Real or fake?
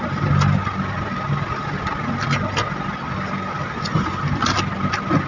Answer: real